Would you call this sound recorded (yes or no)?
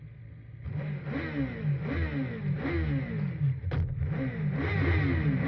yes